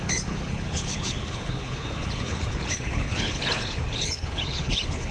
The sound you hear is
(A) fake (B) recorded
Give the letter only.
A